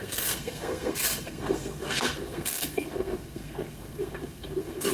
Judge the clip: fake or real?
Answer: fake